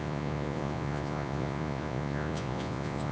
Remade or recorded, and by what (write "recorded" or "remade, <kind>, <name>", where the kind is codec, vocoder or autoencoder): remade, vocoder, Vocos